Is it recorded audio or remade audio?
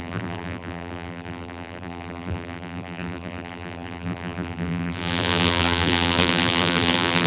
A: remade